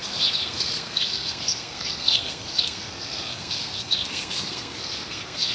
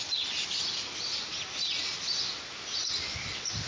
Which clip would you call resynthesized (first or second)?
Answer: first